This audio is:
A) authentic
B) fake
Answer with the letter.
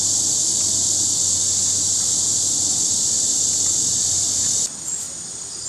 A